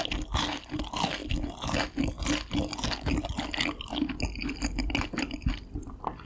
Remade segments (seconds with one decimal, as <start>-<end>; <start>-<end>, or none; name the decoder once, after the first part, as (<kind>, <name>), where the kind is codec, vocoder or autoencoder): none